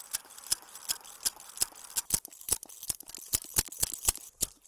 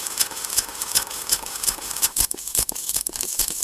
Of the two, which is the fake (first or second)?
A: second